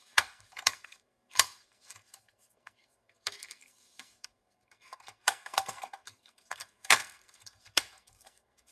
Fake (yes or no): yes